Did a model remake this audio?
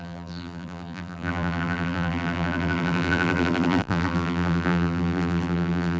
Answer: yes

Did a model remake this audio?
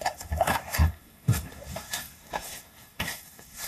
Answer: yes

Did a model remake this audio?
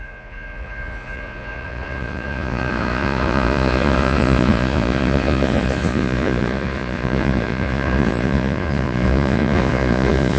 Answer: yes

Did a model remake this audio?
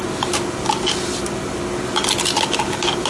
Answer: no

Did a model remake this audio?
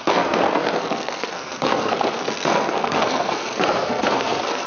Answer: yes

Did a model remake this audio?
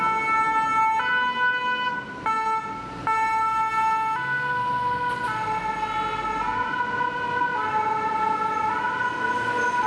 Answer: no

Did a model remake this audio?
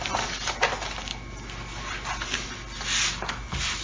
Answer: no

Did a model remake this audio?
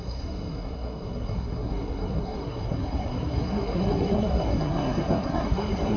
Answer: yes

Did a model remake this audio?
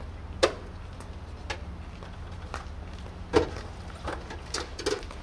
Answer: no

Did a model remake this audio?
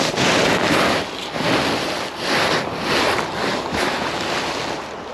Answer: no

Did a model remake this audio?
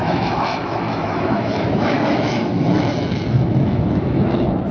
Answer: yes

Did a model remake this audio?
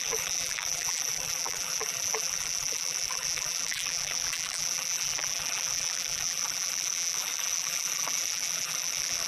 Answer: yes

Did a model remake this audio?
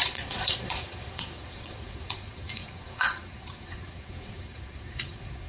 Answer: yes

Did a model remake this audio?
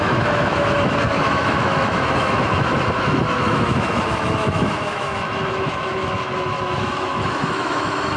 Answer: yes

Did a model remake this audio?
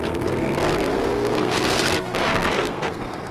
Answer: yes